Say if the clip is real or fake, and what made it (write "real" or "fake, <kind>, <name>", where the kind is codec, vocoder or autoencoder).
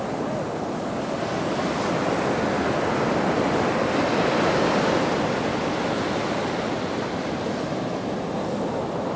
real